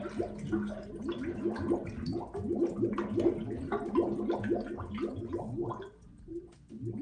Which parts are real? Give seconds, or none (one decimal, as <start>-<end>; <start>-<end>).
0.0-7.0